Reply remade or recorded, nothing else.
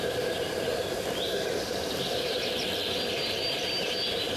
recorded